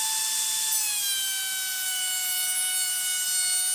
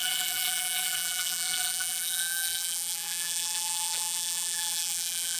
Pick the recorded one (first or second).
first